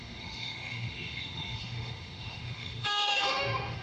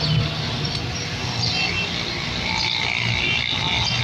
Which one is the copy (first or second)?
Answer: first